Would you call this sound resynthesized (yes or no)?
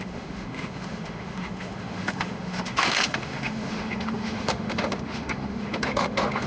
yes